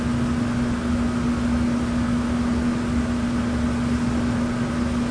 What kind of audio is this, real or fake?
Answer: real